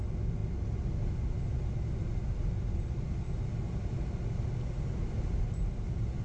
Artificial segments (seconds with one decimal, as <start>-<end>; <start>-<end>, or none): none